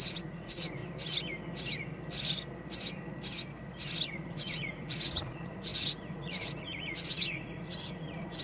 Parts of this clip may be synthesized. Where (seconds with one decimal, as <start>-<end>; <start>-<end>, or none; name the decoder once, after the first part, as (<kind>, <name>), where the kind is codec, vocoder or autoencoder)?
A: 0.0-0.8 (vocoder, Vocos); 4.1-8.4